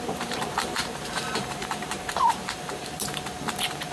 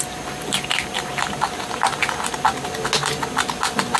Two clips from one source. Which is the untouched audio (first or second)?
second